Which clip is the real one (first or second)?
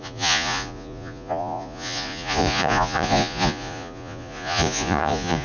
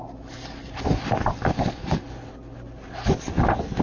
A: second